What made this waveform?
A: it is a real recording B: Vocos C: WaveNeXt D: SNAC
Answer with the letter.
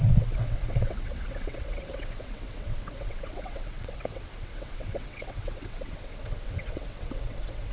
C